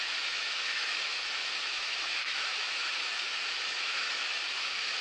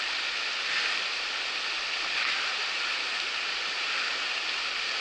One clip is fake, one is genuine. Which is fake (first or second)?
first